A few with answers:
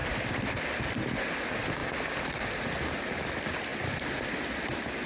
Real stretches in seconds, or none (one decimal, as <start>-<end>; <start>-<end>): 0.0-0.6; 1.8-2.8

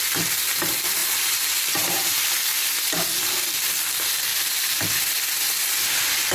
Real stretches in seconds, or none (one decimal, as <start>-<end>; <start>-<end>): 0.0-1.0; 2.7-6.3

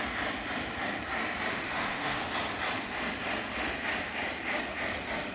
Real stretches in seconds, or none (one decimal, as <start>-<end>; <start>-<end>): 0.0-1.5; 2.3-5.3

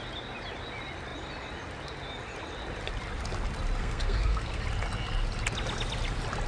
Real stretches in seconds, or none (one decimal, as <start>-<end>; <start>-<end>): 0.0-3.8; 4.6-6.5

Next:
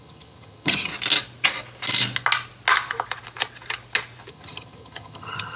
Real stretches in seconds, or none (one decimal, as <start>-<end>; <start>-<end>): 0.9-4.3